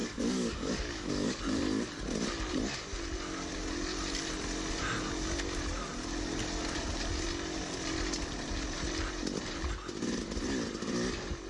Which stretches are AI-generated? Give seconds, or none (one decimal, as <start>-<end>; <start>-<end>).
0.0-1.4